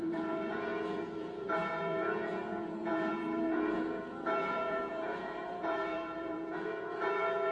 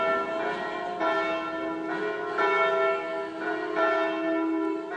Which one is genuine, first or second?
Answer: second